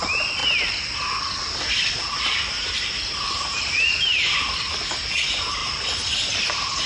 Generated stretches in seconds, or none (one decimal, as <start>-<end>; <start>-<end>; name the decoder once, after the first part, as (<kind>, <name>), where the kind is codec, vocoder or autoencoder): 0.0-0.4 (vocoder, BigVGAN v2); 1.9-5.6; 6.5-6.9